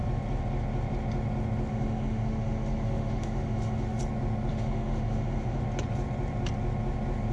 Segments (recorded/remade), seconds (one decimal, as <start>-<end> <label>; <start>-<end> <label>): 0.0-1.7 recorded; 1.7-4.0 remade; 4.0-4.5 recorded; 4.5-5.6 remade; 5.6-7.3 recorded